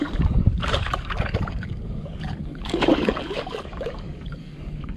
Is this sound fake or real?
fake